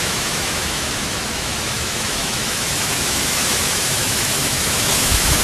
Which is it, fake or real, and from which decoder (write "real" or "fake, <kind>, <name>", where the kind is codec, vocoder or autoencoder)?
fake, autoencoder, DAC-VAE